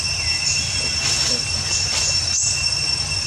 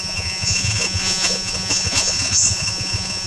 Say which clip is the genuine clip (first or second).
first